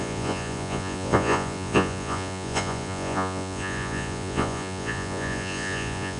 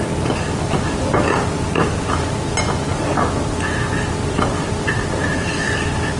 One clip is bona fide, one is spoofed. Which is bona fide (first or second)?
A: second